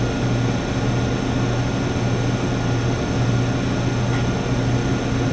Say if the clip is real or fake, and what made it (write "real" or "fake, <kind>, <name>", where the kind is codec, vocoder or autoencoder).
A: real